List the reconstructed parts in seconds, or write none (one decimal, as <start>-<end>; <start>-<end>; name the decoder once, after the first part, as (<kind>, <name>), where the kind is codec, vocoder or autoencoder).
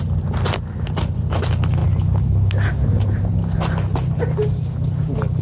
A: none